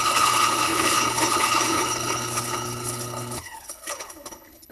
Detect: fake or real fake